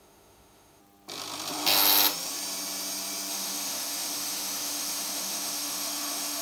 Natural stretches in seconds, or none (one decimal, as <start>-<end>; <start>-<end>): 0.8-3.3